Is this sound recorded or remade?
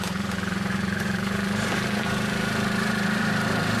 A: remade